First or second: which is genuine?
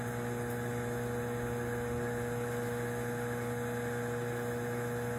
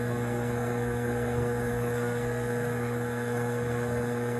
first